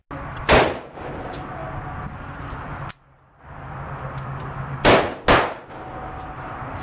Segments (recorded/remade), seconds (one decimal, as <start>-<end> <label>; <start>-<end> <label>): 0.0-6.8 recorded